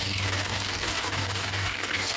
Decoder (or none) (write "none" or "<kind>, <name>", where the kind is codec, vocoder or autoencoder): codec, DAC